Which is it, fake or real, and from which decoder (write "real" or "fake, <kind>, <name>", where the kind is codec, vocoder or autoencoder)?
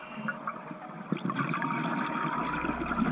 real